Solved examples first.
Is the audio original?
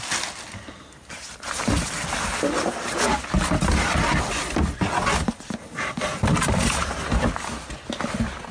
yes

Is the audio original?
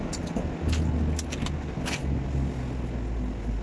yes